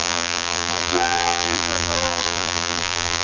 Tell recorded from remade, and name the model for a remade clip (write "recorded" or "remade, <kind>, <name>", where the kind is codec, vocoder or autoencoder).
remade, vocoder, BigVGAN v2